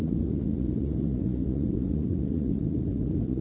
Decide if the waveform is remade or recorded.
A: remade